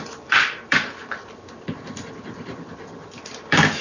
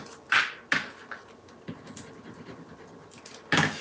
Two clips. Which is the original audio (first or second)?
second